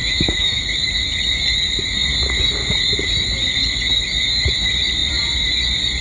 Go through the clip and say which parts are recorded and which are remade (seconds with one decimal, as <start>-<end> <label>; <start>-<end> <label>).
0.0-0.6 remade; 0.6-6.0 recorded